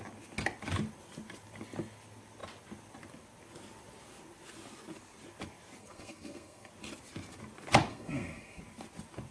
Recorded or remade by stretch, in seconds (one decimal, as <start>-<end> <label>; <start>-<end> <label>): 0.0-5.8 recorded; 5.8-6.7 remade; 6.7-7.9 recorded; 7.9-8.6 remade; 8.6-9.3 recorded